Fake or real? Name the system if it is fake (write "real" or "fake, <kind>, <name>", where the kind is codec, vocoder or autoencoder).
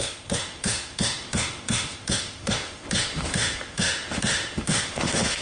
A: fake, autoencoder, DAC-VAE